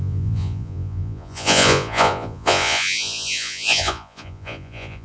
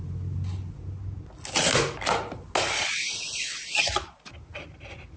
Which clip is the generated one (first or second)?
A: first